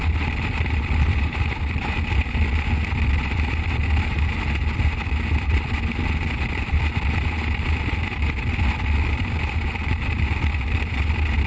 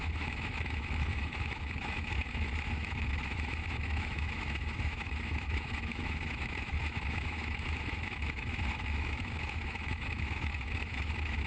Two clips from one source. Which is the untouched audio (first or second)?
first